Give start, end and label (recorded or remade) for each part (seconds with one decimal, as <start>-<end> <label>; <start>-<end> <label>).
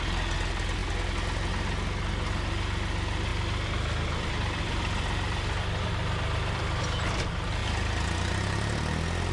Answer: 0.0-3.3 recorded; 3.3-6.8 remade; 6.8-9.3 recorded